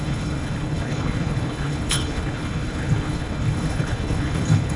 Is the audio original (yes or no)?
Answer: no